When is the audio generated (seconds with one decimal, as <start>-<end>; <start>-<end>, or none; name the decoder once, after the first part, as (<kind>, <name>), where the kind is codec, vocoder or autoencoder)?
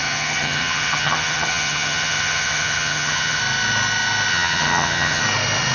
0.0-3.4 (vocoder, HiFi-GAN); 4.3-5.2